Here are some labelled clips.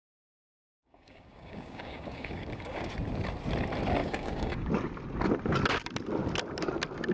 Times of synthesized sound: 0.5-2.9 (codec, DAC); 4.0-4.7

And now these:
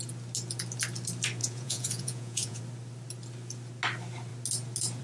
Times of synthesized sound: 1.4-2.6 (vocoder, Vocos)

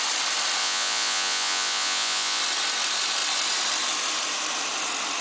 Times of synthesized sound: 0.6-2.4 (vocoder, Vocos)

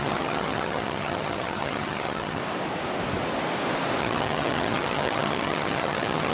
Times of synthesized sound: 0.0-2.4 (vocoder, HiFi-GAN); 4.0-6.3

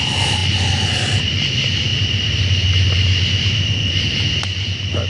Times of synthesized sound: none

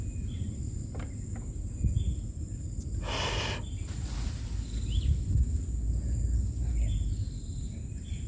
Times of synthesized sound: 2.1-2.6 (vocoder, BigVGAN v2)